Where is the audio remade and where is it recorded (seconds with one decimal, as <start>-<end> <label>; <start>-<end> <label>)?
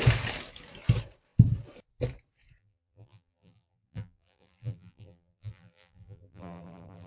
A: 0.0-2.6 recorded; 2.6-7.1 remade